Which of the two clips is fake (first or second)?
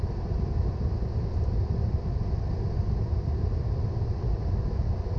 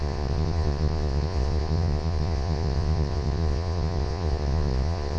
second